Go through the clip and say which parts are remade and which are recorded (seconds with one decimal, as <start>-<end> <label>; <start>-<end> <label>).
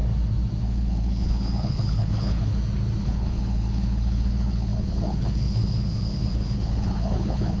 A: 0.0-0.6 recorded; 0.6-2.5 remade; 2.5-3.0 recorded; 3.0-7.6 remade